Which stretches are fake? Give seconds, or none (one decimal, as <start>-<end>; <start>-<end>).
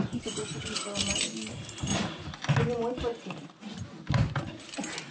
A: none